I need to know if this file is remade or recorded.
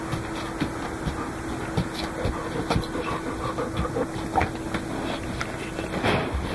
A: recorded